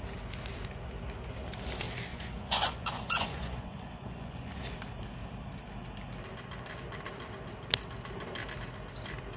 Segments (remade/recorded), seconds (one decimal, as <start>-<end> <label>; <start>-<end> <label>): 0.0-2.1 recorded; 2.1-4.6 remade; 4.6-9.4 recorded